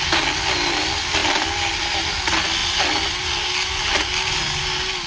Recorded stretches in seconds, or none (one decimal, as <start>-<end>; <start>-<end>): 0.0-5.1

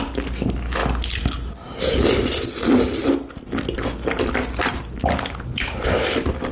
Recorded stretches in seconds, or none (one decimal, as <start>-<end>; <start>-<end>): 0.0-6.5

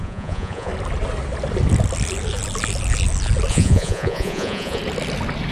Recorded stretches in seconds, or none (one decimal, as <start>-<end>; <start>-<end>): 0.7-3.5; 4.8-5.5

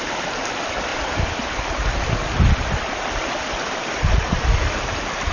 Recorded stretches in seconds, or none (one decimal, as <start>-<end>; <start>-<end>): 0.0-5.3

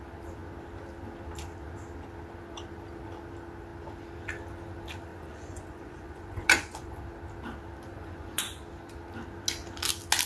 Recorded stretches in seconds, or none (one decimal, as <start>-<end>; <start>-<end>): 0.0-5.1; 7.0-7.9; 8.6-10.3

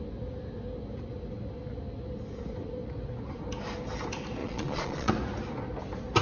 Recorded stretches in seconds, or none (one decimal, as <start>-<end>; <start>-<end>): 0.0-4.4; 5.1-6.2

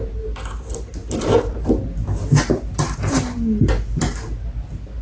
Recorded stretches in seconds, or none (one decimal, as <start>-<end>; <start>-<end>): 0.0-5.0

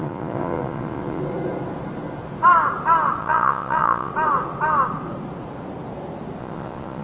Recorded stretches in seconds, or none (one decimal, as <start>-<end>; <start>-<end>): 1.2-3.2; 4.1-6.4